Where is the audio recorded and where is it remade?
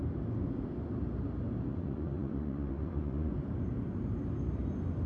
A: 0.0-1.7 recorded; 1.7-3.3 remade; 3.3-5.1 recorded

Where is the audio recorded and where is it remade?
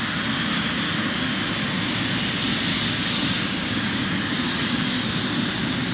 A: 0.0-0.5 recorded; 0.5-1.3 remade; 1.3-2.7 recorded; 2.7-5.2 remade; 5.2-5.9 recorded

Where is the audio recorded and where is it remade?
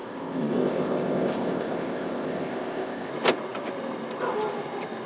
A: 0.0-3.1 remade; 3.1-5.1 recorded